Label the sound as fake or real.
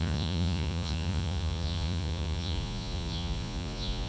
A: fake